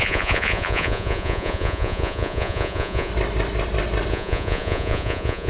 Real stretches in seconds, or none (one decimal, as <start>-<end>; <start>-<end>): 3.1-4.1